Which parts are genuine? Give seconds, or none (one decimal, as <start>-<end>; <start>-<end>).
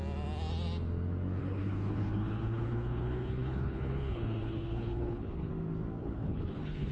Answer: 0.0-1.4; 5.5-6.0